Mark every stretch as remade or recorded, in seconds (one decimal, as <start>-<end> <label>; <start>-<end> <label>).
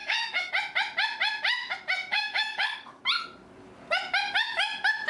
0.0-0.5 remade; 0.5-2.1 recorded; 2.1-3.0 remade; 3.0-5.1 recorded